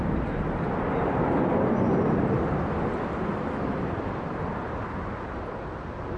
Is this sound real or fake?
fake